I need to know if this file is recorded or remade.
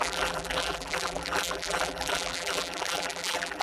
remade